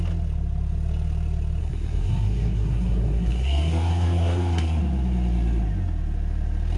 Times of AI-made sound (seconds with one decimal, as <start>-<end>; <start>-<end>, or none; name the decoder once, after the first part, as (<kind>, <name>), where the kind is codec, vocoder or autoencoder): 1.6-4.8 (codec, SNAC)